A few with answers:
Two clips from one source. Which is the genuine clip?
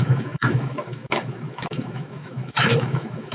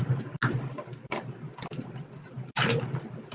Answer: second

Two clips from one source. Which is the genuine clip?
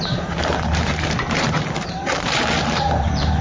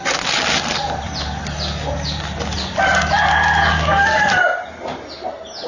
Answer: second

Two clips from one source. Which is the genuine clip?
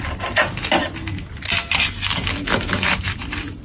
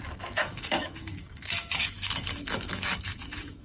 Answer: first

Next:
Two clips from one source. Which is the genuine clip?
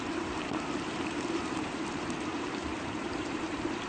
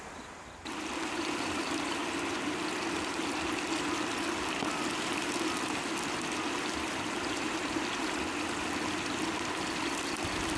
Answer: second